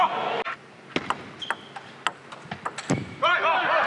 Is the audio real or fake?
real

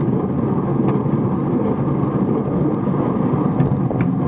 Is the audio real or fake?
real